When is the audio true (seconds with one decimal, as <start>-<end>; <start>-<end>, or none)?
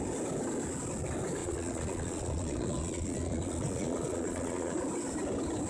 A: 0.0-1.4; 4.8-5.7